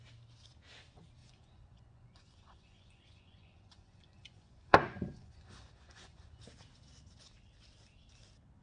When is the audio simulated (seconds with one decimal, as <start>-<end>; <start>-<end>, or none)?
1.2-6.4